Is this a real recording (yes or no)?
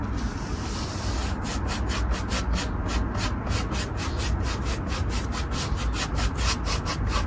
yes